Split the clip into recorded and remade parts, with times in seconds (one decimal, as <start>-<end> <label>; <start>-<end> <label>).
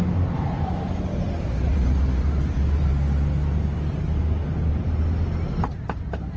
0.0-1.7 recorded; 1.7-2.9 remade; 2.9-4.4 recorded; 4.4-5.0 remade; 5.0-6.4 recorded